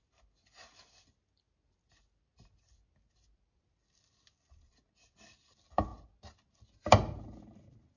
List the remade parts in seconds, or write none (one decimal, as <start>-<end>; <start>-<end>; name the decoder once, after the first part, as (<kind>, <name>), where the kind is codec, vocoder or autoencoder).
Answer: none